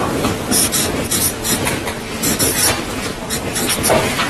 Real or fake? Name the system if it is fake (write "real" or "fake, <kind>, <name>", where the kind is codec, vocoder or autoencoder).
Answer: real